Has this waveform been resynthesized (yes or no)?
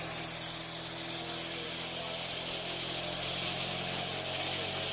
no